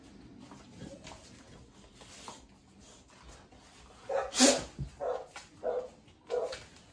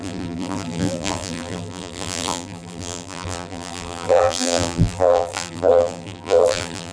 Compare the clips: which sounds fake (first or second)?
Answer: second